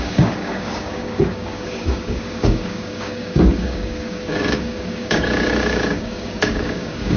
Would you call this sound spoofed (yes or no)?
yes